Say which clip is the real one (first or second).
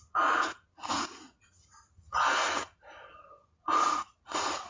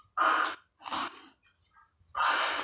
second